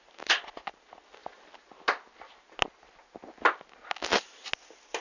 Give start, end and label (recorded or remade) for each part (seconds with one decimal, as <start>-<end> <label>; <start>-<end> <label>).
0.0-5.0 recorded